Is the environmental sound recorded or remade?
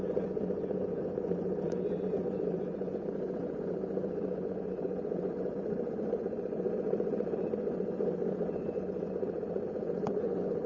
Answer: remade